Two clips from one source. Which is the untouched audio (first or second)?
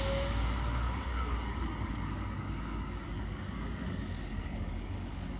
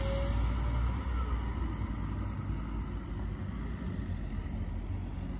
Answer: second